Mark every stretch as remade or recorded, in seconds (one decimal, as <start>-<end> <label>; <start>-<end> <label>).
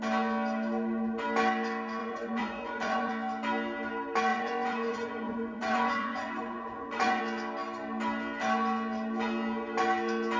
0.0-2.0 recorded; 2.0-3.1 remade; 3.1-4.3 recorded; 4.3-7.2 remade; 7.2-10.4 recorded